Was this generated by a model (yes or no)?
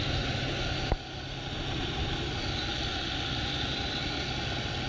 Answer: no